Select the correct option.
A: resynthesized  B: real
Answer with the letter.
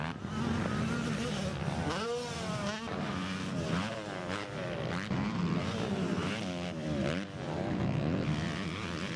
B